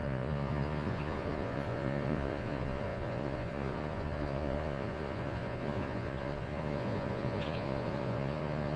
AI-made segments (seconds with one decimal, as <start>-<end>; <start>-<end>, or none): 0.0-8.8